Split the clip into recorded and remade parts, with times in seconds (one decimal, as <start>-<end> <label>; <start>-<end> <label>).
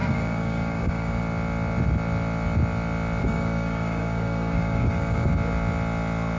0.0-1.2 remade; 1.2-3.2 recorded; 3.2-5.3 remade; 5.3-6.4 recorded